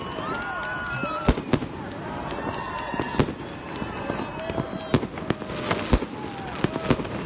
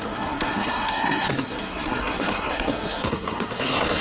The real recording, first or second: first